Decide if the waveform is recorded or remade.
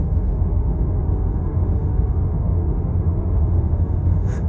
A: remade